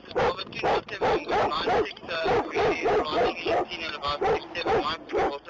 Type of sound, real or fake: real